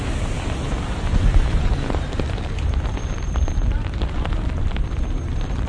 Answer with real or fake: fake